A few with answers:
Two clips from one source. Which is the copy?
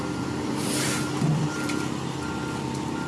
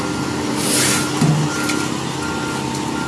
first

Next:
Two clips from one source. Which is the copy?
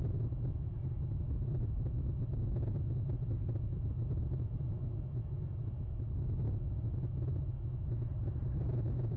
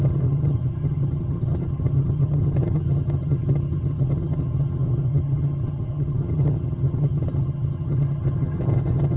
second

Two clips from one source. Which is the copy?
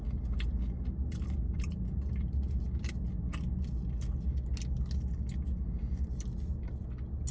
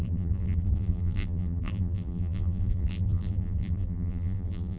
second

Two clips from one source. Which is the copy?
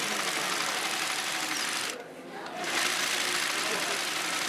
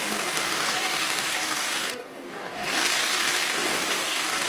second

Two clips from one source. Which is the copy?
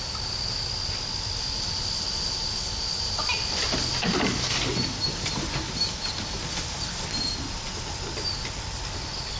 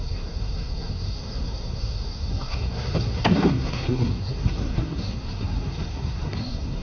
second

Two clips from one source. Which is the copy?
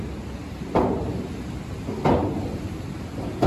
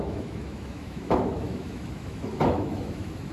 second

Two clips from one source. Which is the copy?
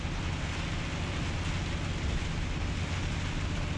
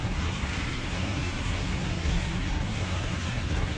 second